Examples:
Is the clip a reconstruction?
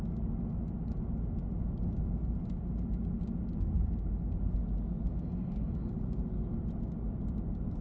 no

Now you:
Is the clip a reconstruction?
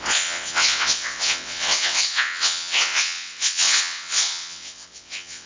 yes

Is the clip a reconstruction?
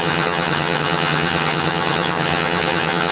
yes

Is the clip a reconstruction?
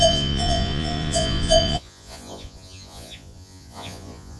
yes